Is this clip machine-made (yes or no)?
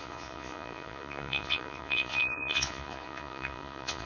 yes